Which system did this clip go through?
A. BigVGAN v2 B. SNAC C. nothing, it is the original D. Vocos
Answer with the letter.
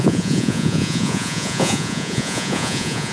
D